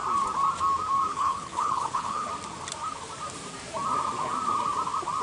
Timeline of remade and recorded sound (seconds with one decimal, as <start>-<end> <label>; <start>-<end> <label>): 0.0-1.1 recorded; 1.1-2.3 remade; 2.3-5.2 recorded